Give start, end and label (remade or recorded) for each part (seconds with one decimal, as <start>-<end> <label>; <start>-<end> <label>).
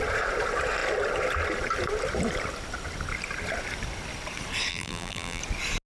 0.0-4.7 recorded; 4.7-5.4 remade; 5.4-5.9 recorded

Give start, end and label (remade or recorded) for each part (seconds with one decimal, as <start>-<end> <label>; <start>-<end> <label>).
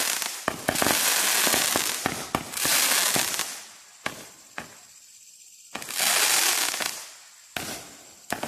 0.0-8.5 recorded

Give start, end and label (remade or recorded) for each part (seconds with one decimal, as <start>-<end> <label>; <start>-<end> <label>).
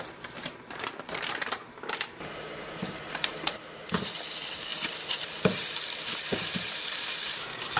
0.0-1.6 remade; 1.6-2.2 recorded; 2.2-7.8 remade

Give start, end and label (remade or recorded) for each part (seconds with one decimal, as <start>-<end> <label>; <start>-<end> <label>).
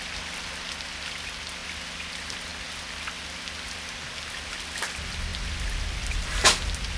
0.0-7.0 recorded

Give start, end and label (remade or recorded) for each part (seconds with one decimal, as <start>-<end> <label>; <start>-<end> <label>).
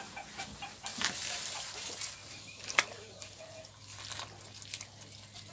0.0-0.9 recorded; 0.9-1.6 remade; 1.6-2.2 recorded; 2.2-3.4 remade; 3.4-5.5 recorded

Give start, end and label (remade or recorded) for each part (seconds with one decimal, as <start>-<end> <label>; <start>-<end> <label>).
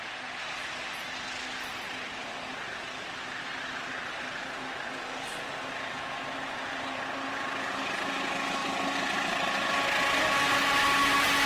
0.0-11.5 recorded